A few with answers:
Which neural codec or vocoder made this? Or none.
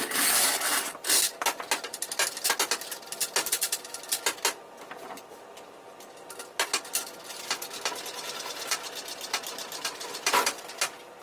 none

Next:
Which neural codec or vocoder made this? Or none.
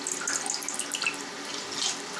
none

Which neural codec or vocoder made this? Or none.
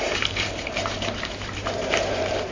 vocoder, BigVGAN v2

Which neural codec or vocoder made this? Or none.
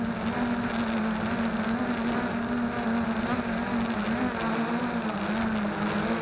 none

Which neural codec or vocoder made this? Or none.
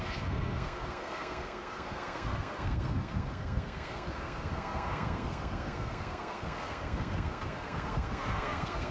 codec, SNAC